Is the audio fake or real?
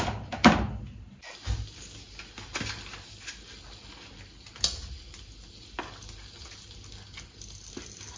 real